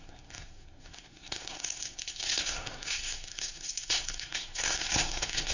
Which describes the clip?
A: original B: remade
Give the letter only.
B